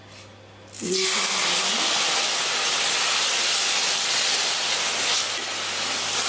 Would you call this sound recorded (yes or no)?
yes